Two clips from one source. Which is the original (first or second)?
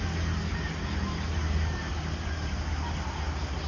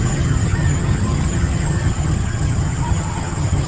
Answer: first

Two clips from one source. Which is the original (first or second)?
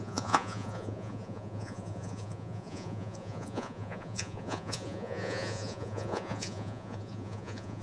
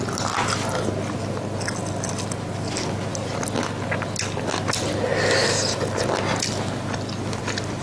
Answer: second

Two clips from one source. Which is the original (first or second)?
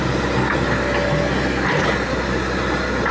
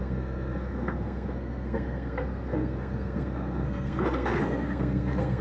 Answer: first